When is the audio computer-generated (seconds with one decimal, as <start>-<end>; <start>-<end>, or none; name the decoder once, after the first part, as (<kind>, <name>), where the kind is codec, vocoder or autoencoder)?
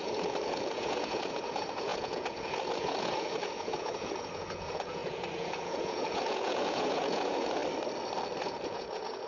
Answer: 0.0-7.6 (vocoder, Vocos); 8.4-9.3